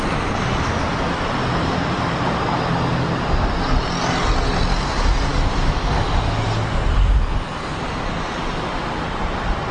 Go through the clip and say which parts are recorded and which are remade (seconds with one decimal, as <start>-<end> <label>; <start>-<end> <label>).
0.0-9.7 recorded